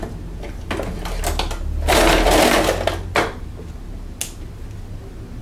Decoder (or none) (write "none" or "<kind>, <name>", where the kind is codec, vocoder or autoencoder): none